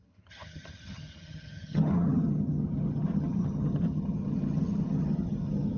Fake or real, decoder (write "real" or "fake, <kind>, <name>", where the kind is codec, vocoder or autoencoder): fake, vocoder, HiFi-GAN